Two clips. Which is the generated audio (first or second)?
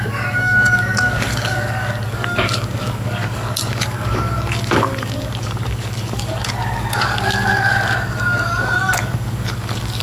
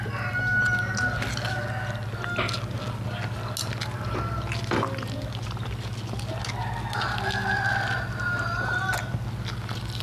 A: first